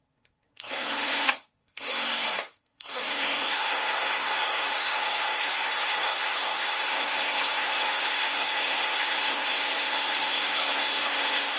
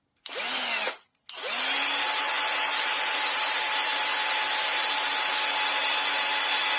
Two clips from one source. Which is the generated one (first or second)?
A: first